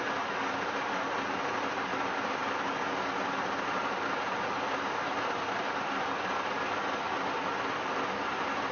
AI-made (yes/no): no